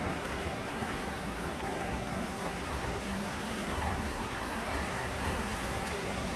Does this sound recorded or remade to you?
remade